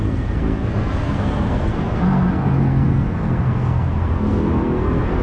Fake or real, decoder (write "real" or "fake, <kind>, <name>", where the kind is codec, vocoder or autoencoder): fake, codec, SNAC